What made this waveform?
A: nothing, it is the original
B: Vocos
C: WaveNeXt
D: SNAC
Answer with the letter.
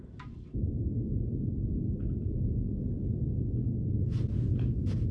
A